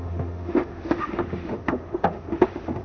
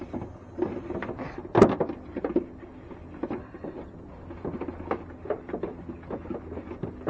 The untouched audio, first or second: second